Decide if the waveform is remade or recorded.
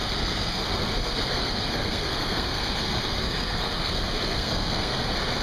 remade